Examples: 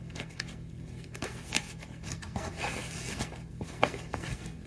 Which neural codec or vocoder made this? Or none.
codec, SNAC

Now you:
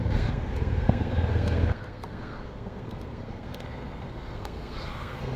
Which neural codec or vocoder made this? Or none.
codec, SNAC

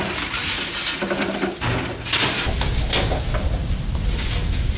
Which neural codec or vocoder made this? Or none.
none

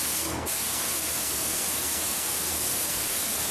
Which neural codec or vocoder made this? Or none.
codec, SNAC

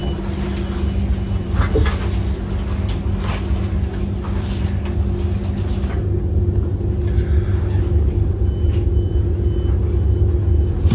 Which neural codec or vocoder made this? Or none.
none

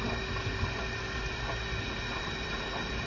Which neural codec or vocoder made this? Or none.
none